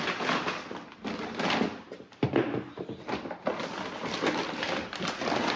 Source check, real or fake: real